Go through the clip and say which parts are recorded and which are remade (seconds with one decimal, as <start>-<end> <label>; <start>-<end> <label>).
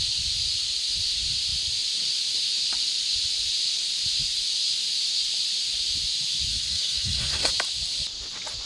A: 0.0-6.5 recorded; 6.5-7.5 remade; 7.5-8.7 recorded